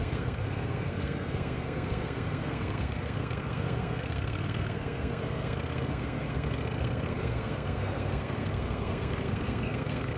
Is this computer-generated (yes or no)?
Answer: yes